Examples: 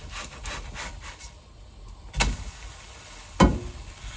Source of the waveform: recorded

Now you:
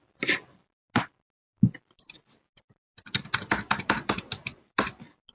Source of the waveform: recorded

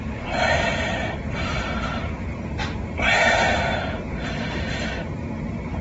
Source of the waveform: remade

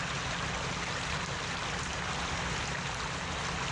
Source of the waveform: recorded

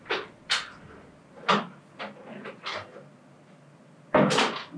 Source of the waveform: recorded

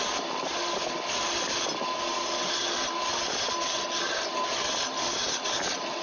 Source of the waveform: recorded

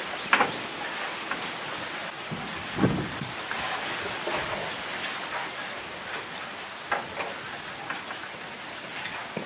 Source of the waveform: recorded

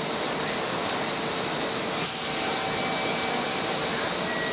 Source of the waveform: recorded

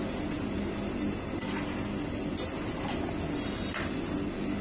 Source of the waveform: recorded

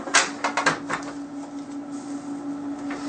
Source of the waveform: recorded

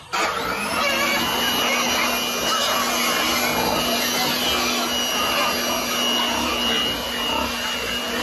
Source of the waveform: recorded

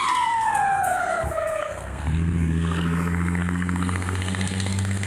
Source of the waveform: remade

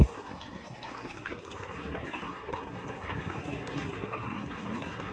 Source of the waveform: remade